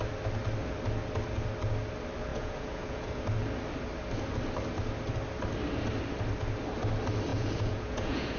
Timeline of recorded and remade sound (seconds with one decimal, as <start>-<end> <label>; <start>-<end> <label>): 0.0-2.3 recorded; 2.3-3.2 remade; 3.2-7.3 recorded; 7.3-8.4 remade